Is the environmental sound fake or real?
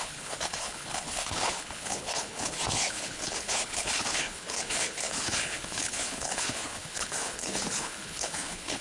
fake